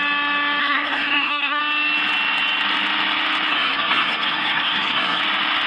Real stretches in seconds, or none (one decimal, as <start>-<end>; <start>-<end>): 0.0-0.6; 1.6-3.5; 5.2-5.7

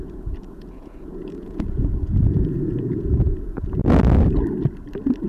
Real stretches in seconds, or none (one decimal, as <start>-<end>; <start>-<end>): 3.8-5.3

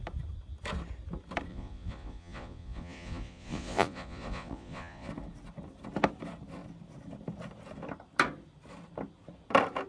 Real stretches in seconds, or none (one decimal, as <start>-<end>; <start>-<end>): 0.0-1.5; 5.1-9.9

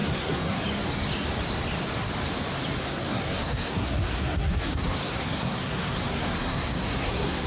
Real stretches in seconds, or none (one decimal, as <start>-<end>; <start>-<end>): 0.6-2.9